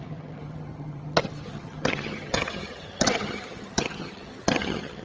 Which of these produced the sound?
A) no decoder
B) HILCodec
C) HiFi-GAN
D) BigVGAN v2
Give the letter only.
C